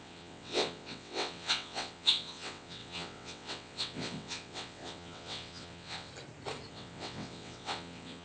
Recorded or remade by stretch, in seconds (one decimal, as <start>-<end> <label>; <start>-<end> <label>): 0.0-6.1 remade; 6.1-6.7 recorded; 6.7-8.2 remade